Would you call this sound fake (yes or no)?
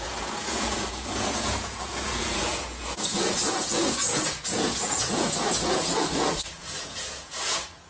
yes